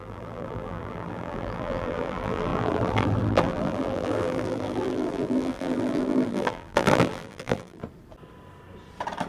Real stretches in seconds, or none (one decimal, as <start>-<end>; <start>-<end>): 7.8-9.3